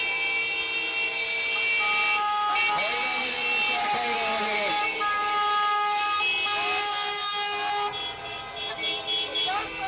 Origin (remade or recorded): recorded